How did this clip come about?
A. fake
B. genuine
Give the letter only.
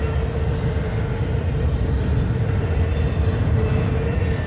B